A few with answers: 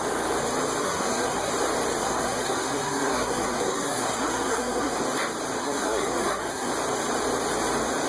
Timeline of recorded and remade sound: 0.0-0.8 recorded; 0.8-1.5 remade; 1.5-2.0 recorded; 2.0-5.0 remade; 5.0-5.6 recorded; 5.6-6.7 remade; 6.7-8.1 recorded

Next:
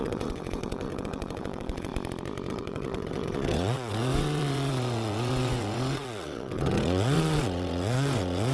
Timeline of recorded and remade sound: 0.0-1.9 remade; 1.9-2.5 recorded; 2.5-8.5 remade

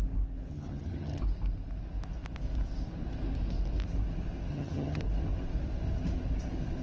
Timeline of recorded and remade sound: 0.0-0.5 recorded; 0.5-1.2 remade; 1.2-4.5 recorded; 4.5-5.0 remade; 5.0-6.8 recorded

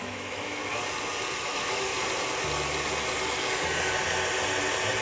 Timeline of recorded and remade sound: 0.0-0.6 remade; 0.6-1.4 recorded; 1.4-1.9 remade; 1.9-5.0 recorded

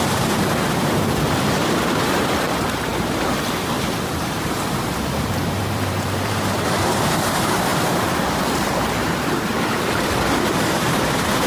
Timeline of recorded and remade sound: 0.0-11.5 remade

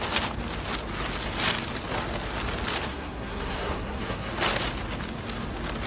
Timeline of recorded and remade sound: 0.0-2.9 recorded; 2.9-4.3 remade; 4.3-5.9 recorded